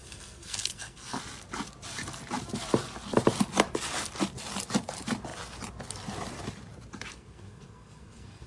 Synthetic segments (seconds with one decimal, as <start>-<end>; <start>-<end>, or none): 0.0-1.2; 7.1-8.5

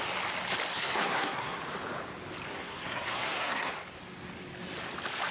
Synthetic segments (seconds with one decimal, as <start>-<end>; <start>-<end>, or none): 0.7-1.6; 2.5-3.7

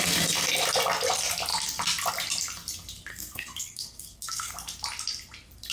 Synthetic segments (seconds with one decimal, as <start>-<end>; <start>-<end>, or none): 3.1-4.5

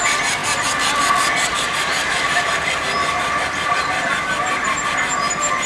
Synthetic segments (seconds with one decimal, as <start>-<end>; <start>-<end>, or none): none